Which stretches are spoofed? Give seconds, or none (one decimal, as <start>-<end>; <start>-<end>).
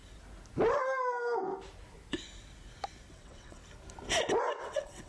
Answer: 3.1-3.6; 4.6-5.1